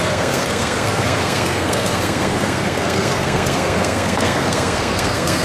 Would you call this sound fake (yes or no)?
yes